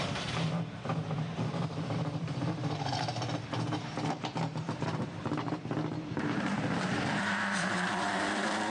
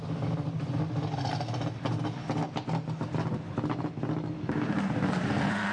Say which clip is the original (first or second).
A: second